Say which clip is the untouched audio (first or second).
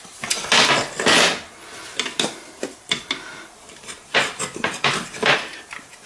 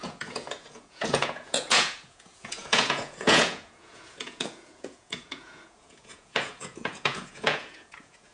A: first